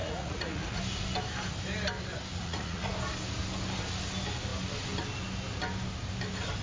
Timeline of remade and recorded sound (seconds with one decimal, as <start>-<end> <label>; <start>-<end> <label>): 0.0-0.8 remade; 0.8-2.3 recorded; 2.3-2.9 remade; 2.9-6.6 recorded

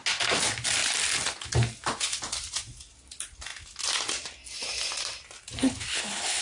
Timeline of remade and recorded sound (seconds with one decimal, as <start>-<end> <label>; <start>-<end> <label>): 0.0-5.6 recorded; 5.6-6.4 remade

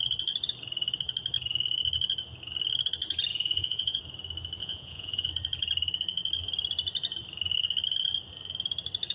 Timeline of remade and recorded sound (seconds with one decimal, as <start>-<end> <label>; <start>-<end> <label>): 0.0-3.3 recorded; 3.3-4.0 remade; 4.0-4.6 recorded; 4.6-5.3 remade; 5.3-9.1 recorded

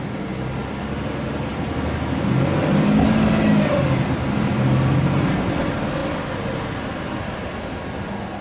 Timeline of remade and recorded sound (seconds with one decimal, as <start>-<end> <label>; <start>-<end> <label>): 0.0-8.4 recorded